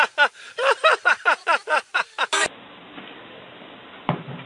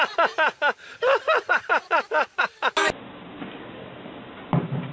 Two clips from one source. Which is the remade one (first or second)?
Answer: first